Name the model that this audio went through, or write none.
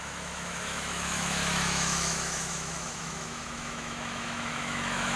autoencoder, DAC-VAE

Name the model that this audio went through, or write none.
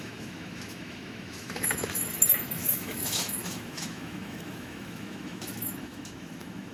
autoencoder, DAC-VAE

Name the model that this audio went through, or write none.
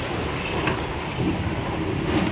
none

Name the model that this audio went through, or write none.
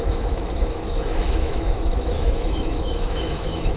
autoencoder, DAC-VAE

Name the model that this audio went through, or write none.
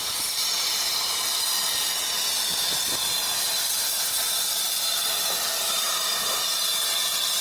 none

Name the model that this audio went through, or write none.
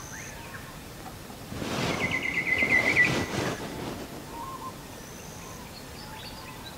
none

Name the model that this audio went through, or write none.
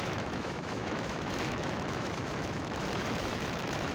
autoencoder, DAC-VAE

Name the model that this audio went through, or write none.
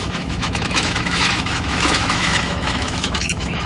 autoencoder, DAC-VAE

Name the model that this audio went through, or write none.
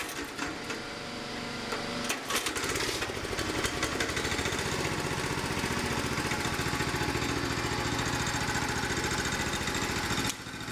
none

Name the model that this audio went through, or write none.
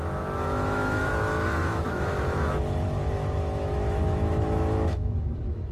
autoencoder, DAC-VAE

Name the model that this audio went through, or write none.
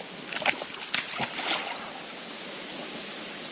none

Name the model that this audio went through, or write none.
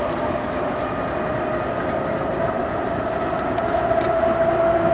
none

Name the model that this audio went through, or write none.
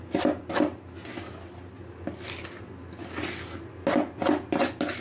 none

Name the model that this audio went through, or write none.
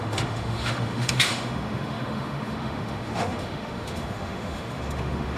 autoencoder, DAC-VAE